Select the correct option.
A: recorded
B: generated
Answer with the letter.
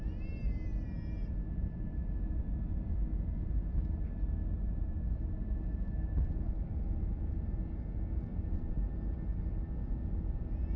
A